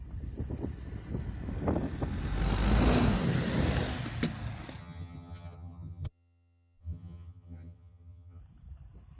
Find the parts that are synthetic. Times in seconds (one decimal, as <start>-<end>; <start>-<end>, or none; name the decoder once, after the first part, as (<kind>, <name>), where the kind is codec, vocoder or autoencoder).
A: 4.8-8.4 (vocoder, HiFi-GAN)